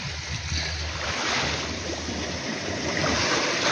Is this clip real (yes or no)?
no